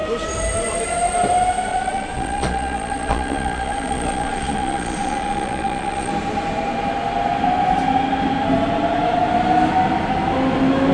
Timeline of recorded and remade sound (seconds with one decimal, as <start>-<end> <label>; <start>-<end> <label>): 0.0-1.7 recorded; 1.7-6.1 remade; 6.1-10.9 recorded